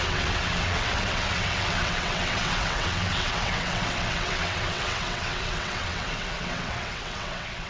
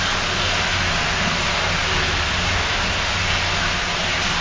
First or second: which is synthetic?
first